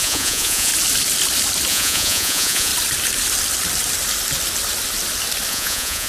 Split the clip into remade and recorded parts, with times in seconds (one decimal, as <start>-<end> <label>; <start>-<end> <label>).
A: 0.0-0.7 remade; 0.7-1.7 recorded; 1.7-2.7 remade; 2.7-5.5 recorded; 5.5-6.1 remade